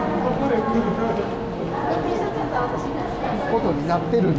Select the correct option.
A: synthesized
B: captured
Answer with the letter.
B